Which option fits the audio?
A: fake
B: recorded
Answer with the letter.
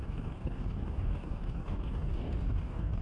A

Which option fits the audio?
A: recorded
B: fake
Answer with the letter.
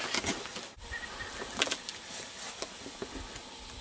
A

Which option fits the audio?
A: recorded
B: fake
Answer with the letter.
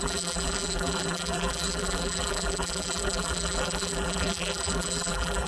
B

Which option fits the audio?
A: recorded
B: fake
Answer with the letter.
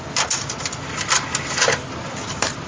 A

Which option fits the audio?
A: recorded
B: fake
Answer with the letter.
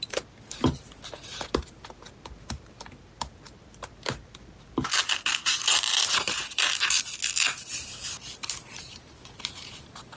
A